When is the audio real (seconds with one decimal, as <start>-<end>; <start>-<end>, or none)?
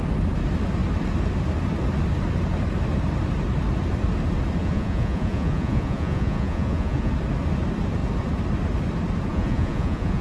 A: 0.0-4.6; 7.1-9.3